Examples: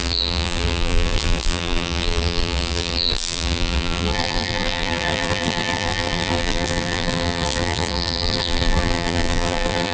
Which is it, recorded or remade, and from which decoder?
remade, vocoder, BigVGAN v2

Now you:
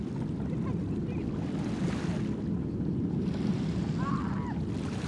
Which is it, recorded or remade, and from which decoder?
recorded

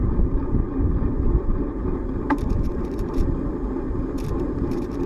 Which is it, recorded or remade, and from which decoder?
remade, vocoder, BigVGAN v2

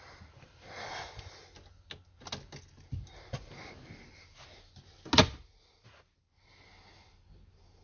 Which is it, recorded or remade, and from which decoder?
recorded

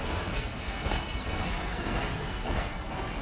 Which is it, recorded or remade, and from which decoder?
remade, codec, SNAC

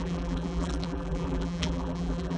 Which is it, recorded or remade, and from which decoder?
remade, vocoder, BigVGAN v2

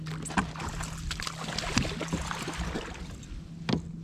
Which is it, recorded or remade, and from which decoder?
recorded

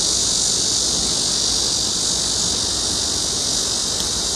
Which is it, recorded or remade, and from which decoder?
recorded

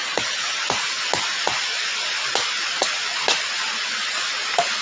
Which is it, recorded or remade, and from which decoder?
recorded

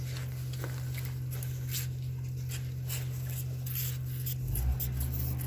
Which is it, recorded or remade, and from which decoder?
recorded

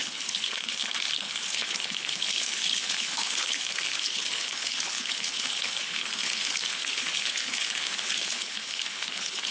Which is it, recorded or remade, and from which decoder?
remade, codec, HILCodec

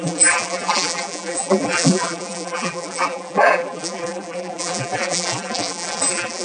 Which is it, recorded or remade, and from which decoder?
remade, vocoder, BigVGAN v2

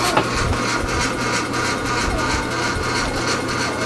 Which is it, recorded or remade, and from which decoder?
recorded